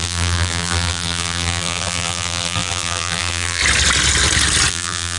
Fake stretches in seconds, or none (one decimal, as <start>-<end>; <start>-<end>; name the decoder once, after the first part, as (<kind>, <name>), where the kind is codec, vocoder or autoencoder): 0.0-3.6 (vocoder, BigVGAN v2); 4.7-5.2